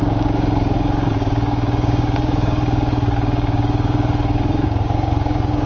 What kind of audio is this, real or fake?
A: fake